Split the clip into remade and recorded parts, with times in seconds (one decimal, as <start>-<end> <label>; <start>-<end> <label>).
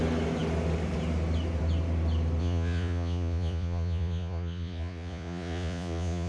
0.0-2.4 recorded; 2.4-6.3 remade